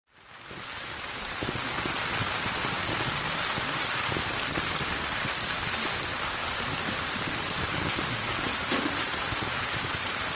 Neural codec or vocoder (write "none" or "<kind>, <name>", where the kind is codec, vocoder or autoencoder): vocoder, BigVGAN v2